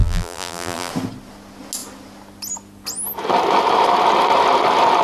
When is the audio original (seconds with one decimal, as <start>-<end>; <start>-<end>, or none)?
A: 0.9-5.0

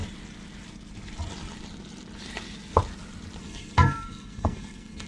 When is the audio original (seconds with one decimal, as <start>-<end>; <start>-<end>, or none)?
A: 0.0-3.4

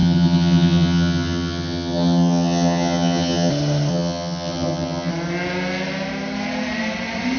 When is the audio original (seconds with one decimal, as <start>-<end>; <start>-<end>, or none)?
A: 3.5-3.9; 5.1-7.4